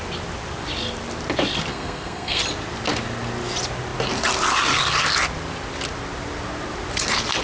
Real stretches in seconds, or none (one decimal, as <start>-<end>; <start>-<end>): 0.0-1.7; 2.4-7.4